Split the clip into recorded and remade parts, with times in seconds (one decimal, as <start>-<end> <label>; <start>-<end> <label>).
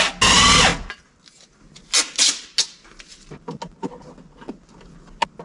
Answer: 0.0-5.4 recorded